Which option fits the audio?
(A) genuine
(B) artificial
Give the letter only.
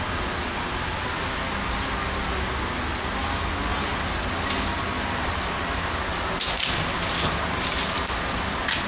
A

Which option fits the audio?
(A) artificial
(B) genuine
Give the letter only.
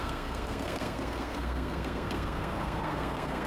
A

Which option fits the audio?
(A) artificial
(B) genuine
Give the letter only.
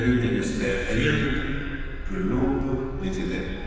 A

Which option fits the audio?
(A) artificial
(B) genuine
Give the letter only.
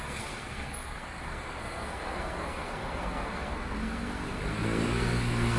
A